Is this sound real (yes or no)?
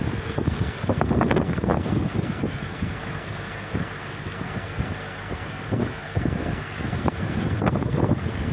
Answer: no